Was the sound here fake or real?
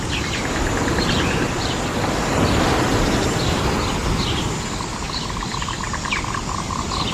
real